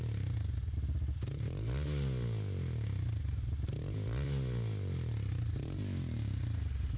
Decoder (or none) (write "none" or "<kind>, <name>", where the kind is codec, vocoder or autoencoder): none